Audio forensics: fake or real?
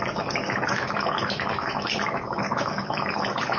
fake